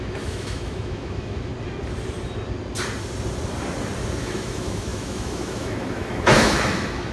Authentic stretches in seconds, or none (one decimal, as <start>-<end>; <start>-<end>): 1.5-4.2